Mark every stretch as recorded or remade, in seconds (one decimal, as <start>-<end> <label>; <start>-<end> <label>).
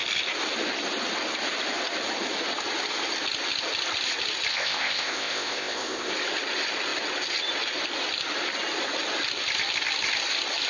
0.0-4.5 recorded; 4.5-6.1 remade; 6.1-10.7 recorded